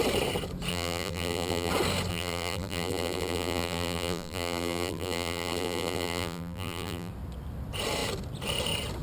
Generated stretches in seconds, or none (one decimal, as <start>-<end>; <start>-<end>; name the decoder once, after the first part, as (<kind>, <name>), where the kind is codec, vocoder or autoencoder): 0.7-1.7 (vocoder, BigVGAN v2); 2.1-7.1